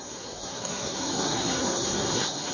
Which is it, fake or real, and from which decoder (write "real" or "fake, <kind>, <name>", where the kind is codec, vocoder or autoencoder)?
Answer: fake, codec, SNAC